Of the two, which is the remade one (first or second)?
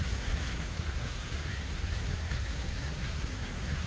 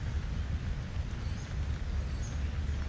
first